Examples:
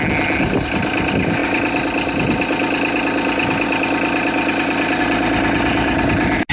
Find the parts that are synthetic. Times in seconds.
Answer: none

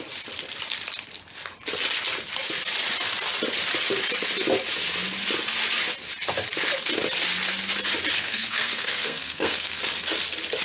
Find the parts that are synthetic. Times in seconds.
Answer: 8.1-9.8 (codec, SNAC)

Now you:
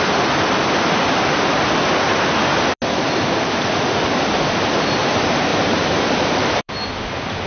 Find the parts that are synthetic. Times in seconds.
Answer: 5.5-6.7 (vocoder, BigVGAN v2)